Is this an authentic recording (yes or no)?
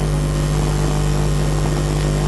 yes